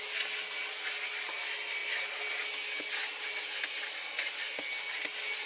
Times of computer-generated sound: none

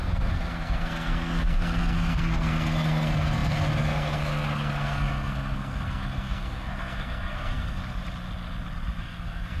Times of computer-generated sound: 0.0-7.8 (codec, SNAC); 9.0-9.6

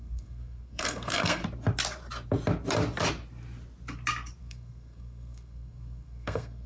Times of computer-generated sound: 0.0-1.4 (codec, SNAC); 4.4-6.7

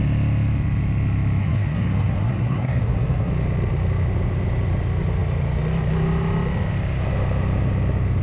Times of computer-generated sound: 1.4-3.3 (codec, SNAC)

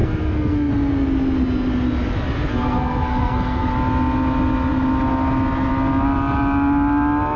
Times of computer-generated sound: 0.0-0.7 (codec, SNAC); 2.5-3.7